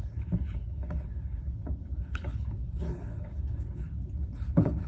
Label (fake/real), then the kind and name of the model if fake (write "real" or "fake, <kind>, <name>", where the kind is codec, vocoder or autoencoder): fake, codec, HILCodec